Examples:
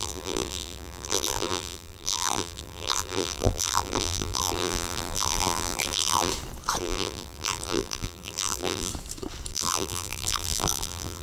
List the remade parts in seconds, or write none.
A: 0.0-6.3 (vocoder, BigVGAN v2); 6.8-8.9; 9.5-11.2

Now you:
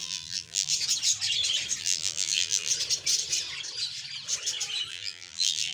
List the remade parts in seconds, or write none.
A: 0.0-0.7 (vocoder, BigVGAN v2); 1.8-2.7; 4.9-5.7

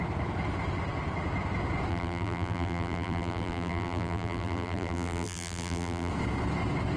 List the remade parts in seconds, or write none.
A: 1.9-6.1 (vocoder, BigVGAN v2)

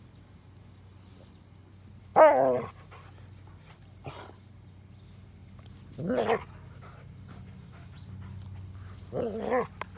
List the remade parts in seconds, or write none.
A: none

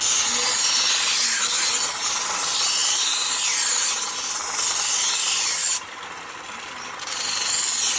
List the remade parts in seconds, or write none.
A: none

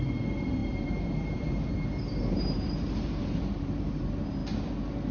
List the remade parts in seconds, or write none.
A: 0.0-4.4 (vocoder, BigVGAN v2)

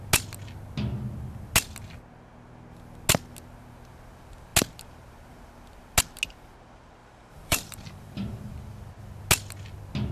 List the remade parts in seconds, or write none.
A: 7.0-8.5 (vocoder, BigVGAN v2)